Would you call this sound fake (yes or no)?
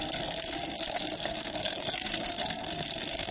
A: yes